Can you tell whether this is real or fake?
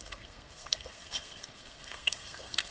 fake